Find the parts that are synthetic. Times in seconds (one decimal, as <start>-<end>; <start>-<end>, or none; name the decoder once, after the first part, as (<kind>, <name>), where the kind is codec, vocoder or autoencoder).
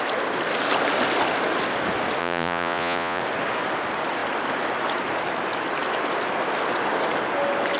2.2-3.2 (vocoder, Vocos)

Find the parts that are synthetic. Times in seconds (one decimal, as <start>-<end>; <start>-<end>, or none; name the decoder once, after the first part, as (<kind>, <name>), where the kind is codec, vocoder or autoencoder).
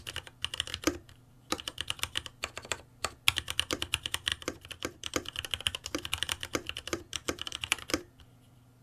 0.7-1.6 (vocoder, BigVGAN v2); 4.3-5.1; 6.9-7.7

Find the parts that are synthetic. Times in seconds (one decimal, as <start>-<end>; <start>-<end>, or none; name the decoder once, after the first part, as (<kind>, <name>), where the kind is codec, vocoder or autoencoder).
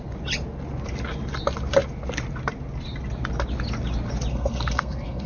4.3-5.3 (codec, SNAC)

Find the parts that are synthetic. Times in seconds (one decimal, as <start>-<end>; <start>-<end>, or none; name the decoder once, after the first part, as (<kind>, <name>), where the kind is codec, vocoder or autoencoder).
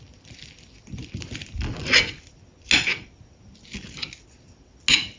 none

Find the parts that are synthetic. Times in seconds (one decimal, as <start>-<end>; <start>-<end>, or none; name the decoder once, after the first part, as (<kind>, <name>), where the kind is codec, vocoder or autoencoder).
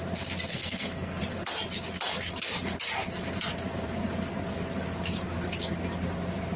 0.5-1.2 (codec, SNAC)